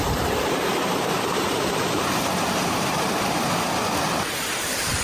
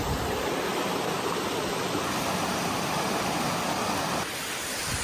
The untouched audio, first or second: second